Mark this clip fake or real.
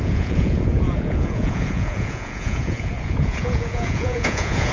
fake